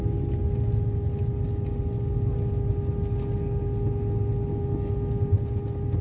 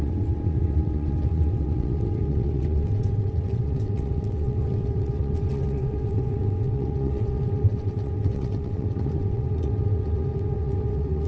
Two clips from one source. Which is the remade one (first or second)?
second